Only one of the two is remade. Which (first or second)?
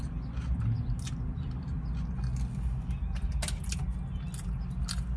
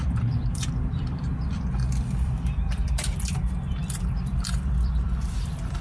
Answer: second